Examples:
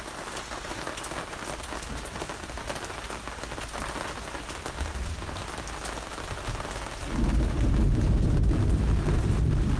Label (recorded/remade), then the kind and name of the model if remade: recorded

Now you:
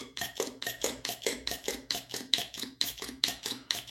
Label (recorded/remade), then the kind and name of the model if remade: remade, autoencoder, DAC-VAE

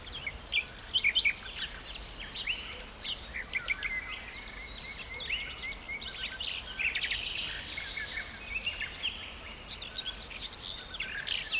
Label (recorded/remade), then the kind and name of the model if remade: recorded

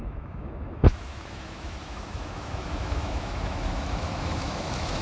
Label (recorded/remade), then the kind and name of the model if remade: remade, autoencoder, DAC-VAE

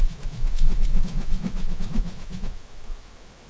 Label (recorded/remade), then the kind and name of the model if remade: remade, autoencoder, DAC-VAE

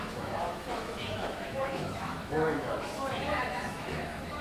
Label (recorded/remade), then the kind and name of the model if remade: remade, autoencoder, DAC-VAE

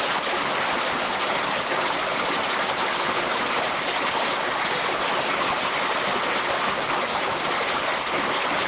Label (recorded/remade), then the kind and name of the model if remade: recorded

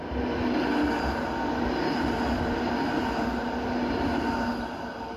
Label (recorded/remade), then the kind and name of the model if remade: recorded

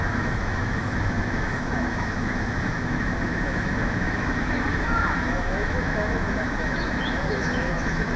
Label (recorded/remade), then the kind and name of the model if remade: remade, autoencoder, DAC-VAE